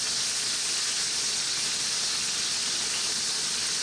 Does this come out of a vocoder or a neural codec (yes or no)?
no